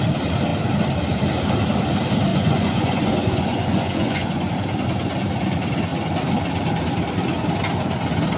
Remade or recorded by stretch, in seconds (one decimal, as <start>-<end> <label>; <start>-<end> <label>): 0.0-2.3 recorded; 2.3-4.5 remade; 4.5-8.4 recorded